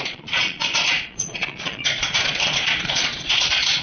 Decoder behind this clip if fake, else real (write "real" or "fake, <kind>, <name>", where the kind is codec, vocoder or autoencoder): fake, vocoder, Vocos